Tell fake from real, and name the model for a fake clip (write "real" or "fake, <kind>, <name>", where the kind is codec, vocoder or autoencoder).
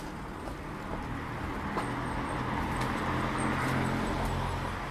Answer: real